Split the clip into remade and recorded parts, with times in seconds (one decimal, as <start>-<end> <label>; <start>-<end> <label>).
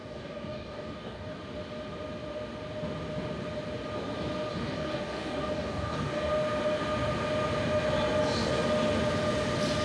0.0-1.3 remade; 1.3-4.5 recorded; 4.5-6.3 remade; 6.3-9.8 recorded